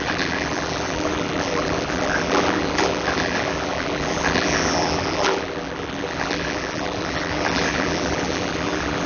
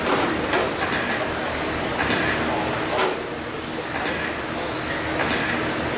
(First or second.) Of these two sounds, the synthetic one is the first